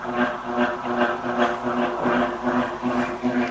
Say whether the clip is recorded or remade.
recorded